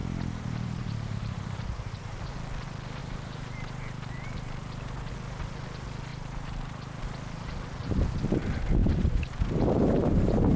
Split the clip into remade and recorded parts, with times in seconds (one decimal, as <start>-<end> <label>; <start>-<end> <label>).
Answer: 0.0-2.0 remade; 2.0-3.0 recorded; 3.0-5.1 remade; 5.1-6.1 recorded; 6.1-7.0 remade; 7.0-8.8 recorded; 8.8-10.6 remade